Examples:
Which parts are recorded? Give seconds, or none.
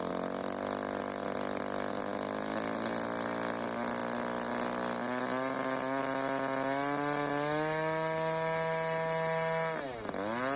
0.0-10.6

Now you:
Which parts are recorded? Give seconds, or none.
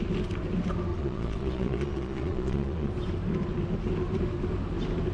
0.0-0.9; 2.9-5.1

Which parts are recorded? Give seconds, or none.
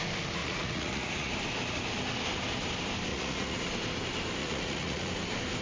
0.0-0.4; 1.3-3.1; 3.7-4.4; 5.1-5.6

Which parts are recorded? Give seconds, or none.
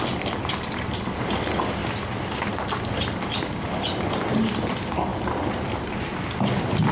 0.0-6.9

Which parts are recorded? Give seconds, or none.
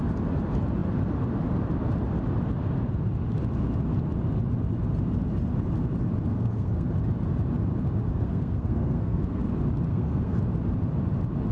0.0-6.3; 6.9-8.1; 9.4-9.9; 10.4-11.5